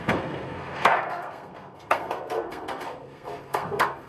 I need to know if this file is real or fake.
fake